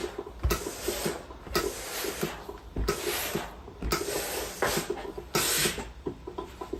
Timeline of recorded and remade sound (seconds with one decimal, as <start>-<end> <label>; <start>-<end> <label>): 0.0-1.6 remade; 1.6-6.8 recorded